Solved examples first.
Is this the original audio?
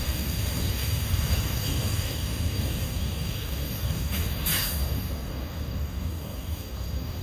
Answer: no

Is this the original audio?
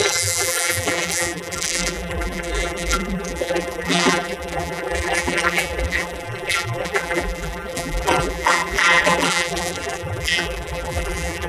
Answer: no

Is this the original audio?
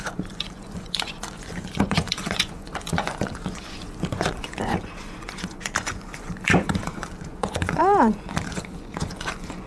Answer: no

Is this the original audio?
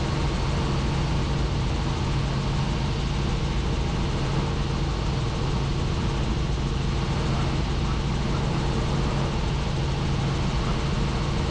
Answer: yes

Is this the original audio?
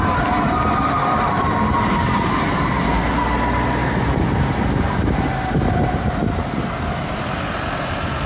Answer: yes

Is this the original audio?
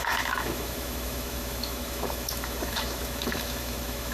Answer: no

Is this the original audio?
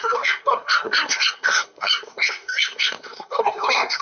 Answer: no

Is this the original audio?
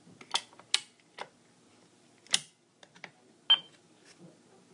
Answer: yes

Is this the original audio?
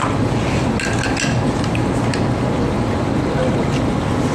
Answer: yes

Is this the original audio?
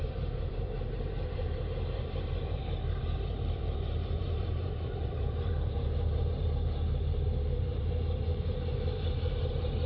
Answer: no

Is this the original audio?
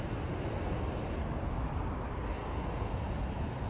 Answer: yes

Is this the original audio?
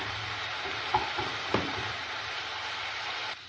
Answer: no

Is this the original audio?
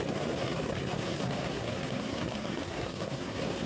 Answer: no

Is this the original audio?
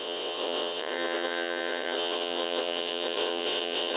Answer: no